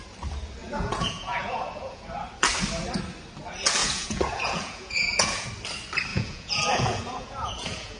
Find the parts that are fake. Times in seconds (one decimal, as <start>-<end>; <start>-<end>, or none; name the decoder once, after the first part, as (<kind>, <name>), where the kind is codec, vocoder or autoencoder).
0.6-2.0 (vocoder, Vocos); 3.8-5.5; 6.1-8.0